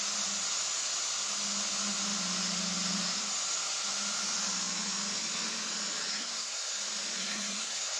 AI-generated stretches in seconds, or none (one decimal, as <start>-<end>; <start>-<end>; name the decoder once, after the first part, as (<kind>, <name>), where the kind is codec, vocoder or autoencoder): 6.1-6.8 (codec, SNAC); 7.2-8.0